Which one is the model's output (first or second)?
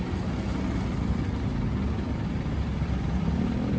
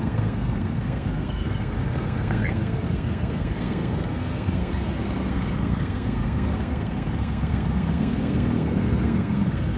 second